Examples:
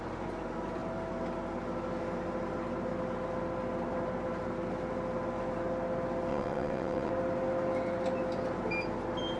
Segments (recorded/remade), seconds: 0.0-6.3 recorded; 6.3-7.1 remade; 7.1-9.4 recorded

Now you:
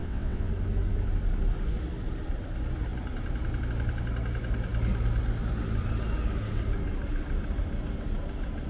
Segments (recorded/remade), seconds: 0.0-0.5 remade; 0.5-8.7 recorded

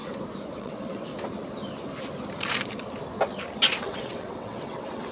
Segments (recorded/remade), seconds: 0.0-0.6 recorded; 0.6-1.1 remade; 1.1-3.8 recorded; 3.8-5.1 remade

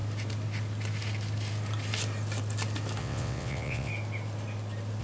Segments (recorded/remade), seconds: 0.0-3.0 recorded; 3.0-3.9 remade; 3.9-5.0 recorded

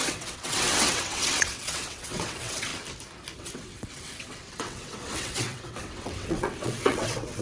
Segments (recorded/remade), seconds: 0.0-2.7 remade; 2.7-3.4 recorded; 3.4-7.4 remade

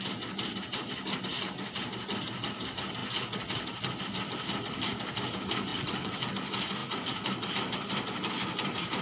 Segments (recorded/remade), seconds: 0.0-5.7 recorded; 5.7-6.3 remade; 6.3-9.0 recorded